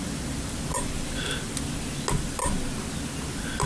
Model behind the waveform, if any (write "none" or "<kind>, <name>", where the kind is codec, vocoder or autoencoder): none